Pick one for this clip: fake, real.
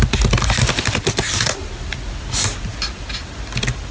real